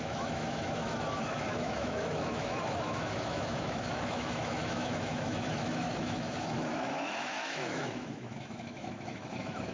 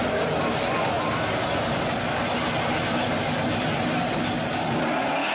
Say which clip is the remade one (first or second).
first